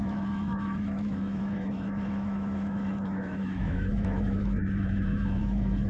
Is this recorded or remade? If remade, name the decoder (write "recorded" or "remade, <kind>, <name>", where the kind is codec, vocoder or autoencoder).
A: remade, autoencoder, DAC-VAE